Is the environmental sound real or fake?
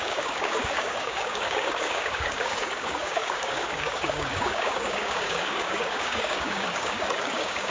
fake